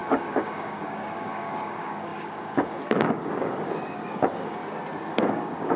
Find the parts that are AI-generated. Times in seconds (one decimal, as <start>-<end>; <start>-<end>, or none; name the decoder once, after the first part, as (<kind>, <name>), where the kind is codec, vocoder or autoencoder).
0.0-4.6 (codec, DAC); 5.1-5.8